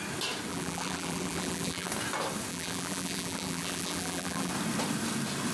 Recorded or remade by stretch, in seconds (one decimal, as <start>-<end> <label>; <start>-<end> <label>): 0.0-0.5 recorded; 0.5-1.9 remade; 1.9-2.5 recorded; 2.5-4.5 remade; 4.5-5.5 recorded